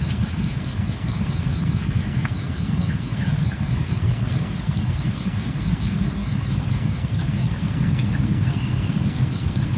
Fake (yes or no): yes